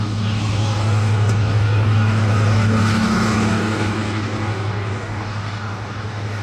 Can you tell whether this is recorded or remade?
remade